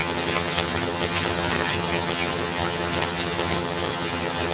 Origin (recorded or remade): remade